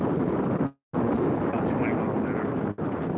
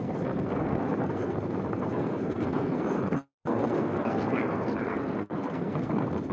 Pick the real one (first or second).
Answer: first